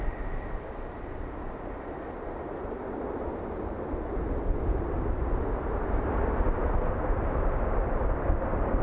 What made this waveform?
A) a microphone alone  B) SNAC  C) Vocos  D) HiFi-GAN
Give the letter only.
A